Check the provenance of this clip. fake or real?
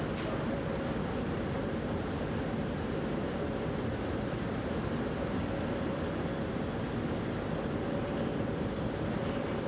real